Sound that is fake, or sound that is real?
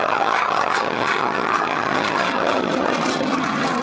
fake